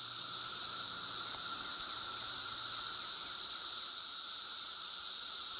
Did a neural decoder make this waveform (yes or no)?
yes